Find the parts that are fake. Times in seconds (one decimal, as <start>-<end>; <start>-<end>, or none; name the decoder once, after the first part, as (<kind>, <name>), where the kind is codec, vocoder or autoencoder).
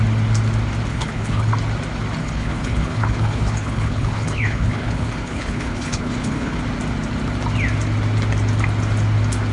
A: 0.9-1.5 (codec, HILCodec); 2.2-6.6